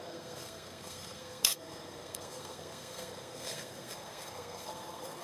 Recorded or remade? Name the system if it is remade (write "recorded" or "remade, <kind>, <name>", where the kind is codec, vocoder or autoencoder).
remade, codec, SNAC